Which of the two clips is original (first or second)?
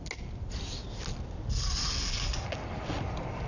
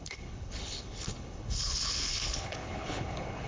first